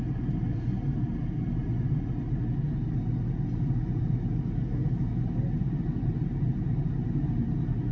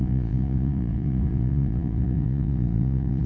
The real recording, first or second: first